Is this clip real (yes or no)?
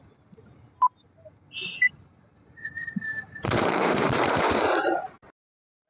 no